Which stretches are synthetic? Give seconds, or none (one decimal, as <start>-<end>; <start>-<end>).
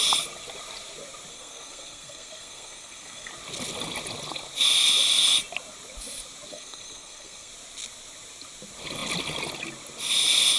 1.3-3.3; 6.5-7.5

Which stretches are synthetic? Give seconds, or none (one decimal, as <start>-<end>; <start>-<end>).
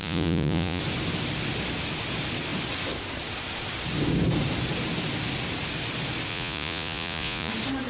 0.0-0.8; 6.3-7.5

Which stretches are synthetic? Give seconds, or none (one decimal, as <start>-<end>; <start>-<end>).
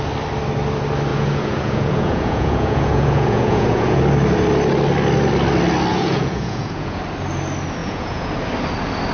1.1-4.0; 5.9-7.0; 7.8-8.3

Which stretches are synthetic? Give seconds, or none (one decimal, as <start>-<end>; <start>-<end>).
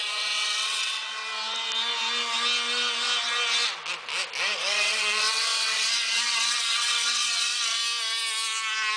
0.0-1.2; 4.6-7.8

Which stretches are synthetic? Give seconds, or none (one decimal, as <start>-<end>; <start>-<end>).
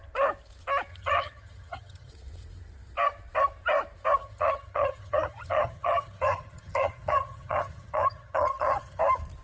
0.9-2.1; 4.2-9.0